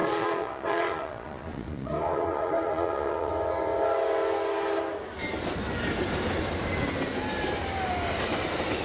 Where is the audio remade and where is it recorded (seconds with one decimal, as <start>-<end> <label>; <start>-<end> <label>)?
0.0-3.3 remade; 3.3-8.8 recorded